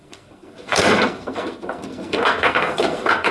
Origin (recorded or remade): remade